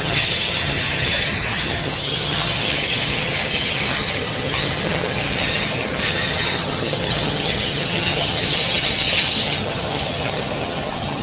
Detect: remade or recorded remade